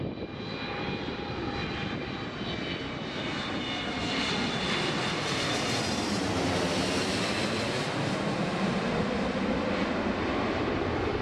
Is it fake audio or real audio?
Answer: real